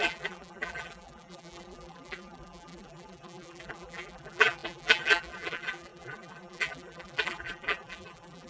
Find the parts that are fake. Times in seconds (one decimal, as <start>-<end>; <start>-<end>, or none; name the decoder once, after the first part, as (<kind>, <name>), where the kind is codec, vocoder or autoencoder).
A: 0.0-8.5 (vocoder, BigVGAN v2)